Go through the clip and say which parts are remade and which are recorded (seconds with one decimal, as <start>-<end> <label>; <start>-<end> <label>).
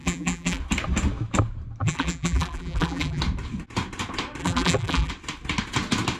0.0-0.6 remade; 0.6-1.8 recorded; 1.8-3.2 remade; 3.2-4.4 recorded; 4.4-5.1 remade; 5.1-6.2 recorded